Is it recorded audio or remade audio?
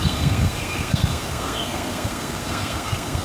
remade